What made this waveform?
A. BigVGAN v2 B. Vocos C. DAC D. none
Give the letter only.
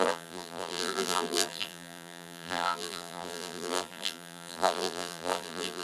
A